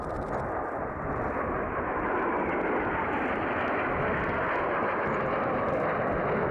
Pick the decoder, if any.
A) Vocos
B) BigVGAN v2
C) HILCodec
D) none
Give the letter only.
D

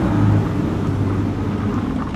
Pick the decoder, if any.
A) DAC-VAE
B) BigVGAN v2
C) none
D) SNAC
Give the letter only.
C